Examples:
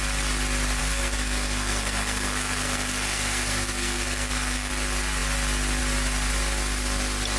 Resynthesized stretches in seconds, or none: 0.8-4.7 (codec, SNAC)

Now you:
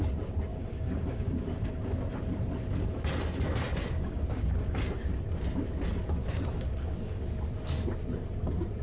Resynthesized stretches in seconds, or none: 0.5-1.7 (codec, DAC); 3.8-4.5; 6.2-7.2

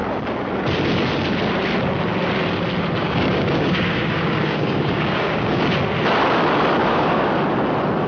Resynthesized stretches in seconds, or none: 3.0-5.6 (codec, DAC); 6.8-7.3

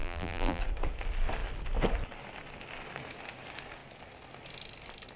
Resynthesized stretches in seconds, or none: 0.0-0.6 (vocoder, BigVGAN v2)